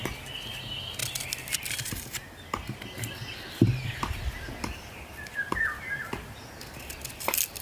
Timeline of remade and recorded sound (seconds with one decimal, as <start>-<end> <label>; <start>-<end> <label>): 0.0-7.6 recorded